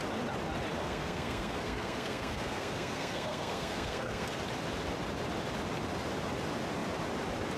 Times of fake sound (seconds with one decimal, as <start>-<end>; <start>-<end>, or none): 0.8-4.4